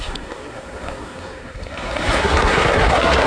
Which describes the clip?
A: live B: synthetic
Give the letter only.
B